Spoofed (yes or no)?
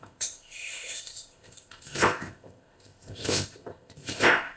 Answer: yes